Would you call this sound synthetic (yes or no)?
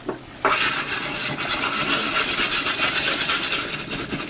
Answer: no